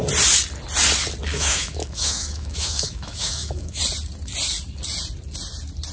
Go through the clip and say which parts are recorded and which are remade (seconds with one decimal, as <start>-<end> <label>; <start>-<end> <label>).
0.0-1.3 recorded; 1.3-3.8 remade; 3.8-5.9 recorded